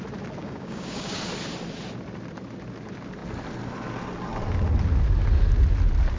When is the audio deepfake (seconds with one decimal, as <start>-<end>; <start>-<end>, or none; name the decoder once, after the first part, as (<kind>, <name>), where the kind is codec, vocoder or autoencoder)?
0.4-1.2 (codec, DAC)